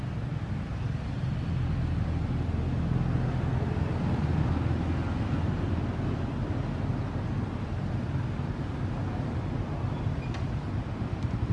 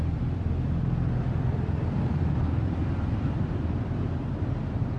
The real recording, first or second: first